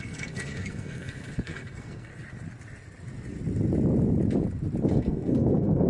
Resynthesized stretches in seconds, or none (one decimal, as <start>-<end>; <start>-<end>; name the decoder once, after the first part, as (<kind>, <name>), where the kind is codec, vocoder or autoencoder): 0.0-2.1 (codec, SNAC); 4.9-5.9